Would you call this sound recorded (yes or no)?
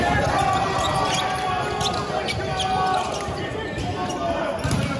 yes